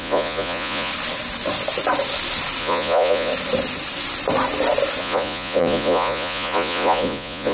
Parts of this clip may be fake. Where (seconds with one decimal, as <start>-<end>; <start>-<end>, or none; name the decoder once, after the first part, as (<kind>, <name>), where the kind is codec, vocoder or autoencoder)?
0.0-0.9 (vocoder, Vocos); 2.6-3.3; 5.0-7.5